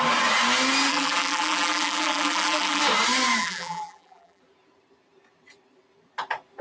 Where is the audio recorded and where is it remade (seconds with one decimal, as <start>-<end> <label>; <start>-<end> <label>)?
0.0-0.9 recorded; 0.9-2.8 remade; 2.8-3.4 recorded; 3.4-4.4 remade; 4.4-6.6 recorded